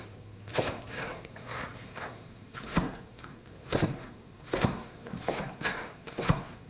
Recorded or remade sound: remade